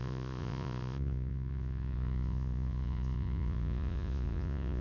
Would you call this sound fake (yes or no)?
yes